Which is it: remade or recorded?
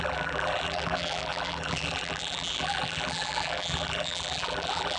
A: remade